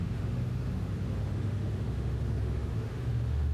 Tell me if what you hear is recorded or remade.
remade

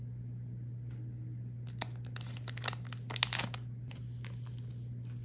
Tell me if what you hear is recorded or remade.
recorded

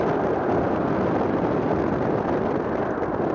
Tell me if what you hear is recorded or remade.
remade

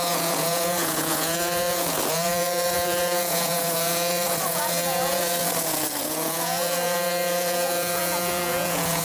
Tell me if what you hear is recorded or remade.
remade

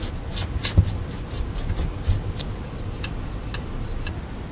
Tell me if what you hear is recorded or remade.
recorded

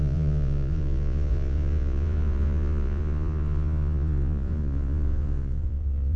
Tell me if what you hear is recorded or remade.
remade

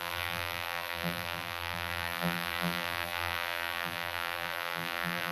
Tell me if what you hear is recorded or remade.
remade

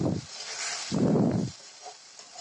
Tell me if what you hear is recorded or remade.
recorded